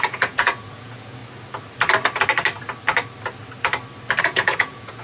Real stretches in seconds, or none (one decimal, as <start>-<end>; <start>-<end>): 1.2-4.2